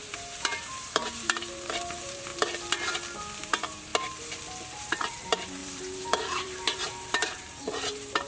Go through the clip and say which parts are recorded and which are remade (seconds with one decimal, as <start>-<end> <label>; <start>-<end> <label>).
0.0-2.3 remade; 2.3-3.4 recorded; 3.4-3.9 remade; 3.9-4.8 recorded; 4.8-8.3 remade